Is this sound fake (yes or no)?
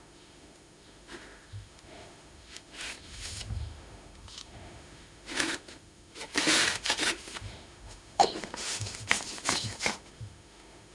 yes